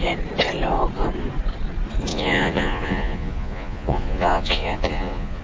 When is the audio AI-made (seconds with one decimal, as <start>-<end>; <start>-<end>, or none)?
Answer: 2.1-5.4